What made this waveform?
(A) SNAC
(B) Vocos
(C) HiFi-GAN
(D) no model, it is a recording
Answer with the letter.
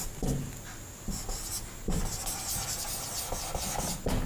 D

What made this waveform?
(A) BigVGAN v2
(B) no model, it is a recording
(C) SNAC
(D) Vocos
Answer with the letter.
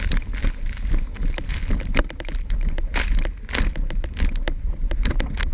B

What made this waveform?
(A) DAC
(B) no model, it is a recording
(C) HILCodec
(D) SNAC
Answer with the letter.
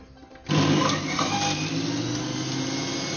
B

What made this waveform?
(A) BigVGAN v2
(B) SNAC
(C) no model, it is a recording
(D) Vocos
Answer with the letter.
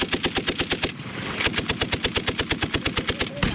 C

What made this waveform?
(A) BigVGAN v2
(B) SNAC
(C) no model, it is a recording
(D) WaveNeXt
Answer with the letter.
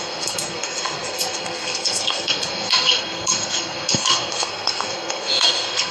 B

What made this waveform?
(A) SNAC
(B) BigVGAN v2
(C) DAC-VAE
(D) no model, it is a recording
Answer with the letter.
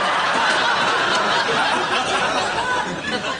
D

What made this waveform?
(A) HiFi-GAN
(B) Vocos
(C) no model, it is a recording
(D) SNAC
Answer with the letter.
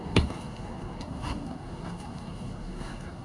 D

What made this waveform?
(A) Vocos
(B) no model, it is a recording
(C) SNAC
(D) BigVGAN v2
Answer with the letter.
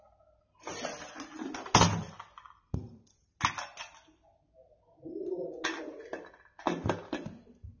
B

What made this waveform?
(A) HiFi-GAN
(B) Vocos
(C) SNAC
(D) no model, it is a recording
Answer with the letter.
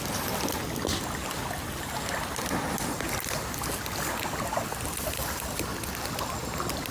D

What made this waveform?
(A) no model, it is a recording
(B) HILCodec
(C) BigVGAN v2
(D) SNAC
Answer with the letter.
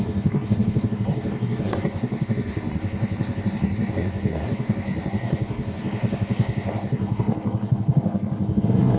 D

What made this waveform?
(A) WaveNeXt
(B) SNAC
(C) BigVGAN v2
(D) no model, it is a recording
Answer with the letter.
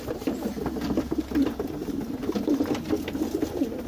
D